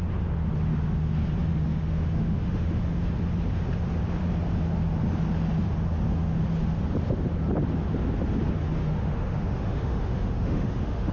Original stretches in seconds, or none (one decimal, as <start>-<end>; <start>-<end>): 0.0-1.5; 2.7-8.8